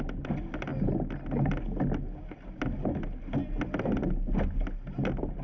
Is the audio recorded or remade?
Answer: recorded